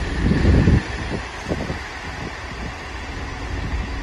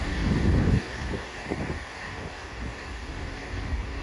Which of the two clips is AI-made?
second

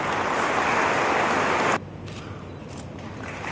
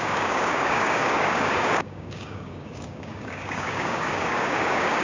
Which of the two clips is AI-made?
second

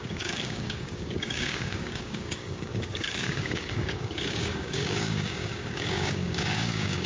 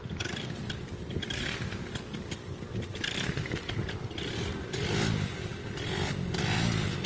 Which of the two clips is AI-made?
first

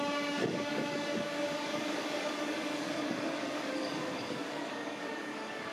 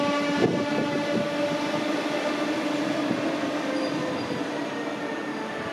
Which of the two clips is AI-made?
first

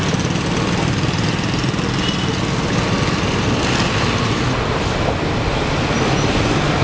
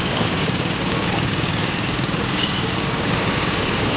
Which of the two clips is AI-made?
second